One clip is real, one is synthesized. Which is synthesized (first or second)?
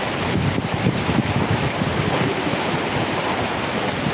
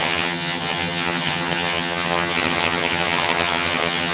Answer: second